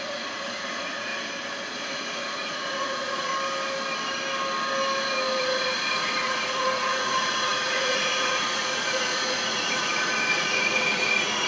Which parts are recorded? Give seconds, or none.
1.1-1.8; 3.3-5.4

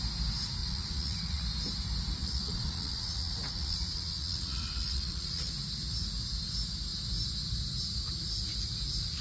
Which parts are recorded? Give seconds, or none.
0.0-0.6; 1.4-2.2; 5.5-9.2

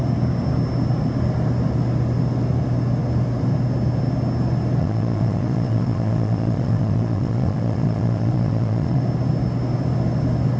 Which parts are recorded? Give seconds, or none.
0.0-4.8; 9.0-10.6

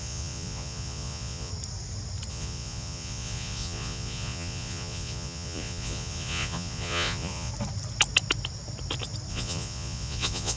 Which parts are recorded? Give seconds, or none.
1.5-2.3; 7.5-9.3